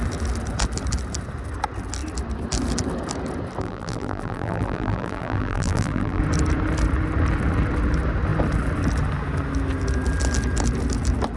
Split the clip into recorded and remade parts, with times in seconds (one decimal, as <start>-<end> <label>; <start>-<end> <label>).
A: 0.0-3.6 recorded; 3.6-6.2 remade; 6.2-11.4 recorded